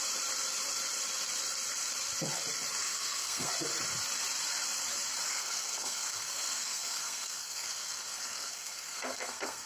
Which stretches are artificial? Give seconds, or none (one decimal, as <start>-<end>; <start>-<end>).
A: 2.8-3.5; 5.2-9.7